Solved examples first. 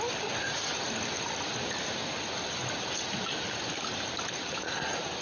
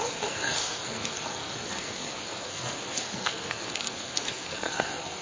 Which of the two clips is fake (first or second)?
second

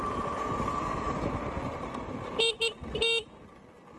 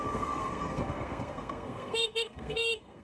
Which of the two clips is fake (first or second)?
second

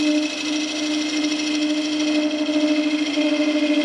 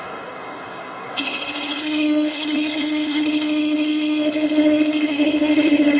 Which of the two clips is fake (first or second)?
second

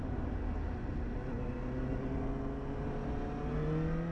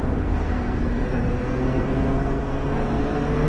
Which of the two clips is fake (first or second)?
second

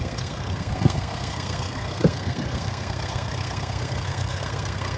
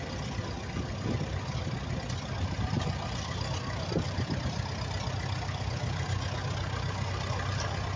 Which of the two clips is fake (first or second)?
first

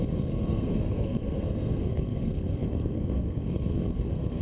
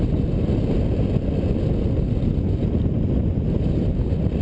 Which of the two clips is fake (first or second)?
first